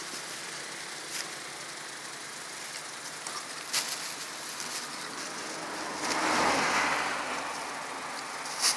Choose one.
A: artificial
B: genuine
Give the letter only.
B